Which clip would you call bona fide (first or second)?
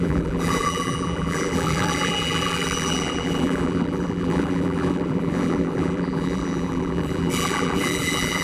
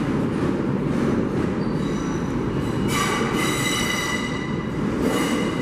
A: second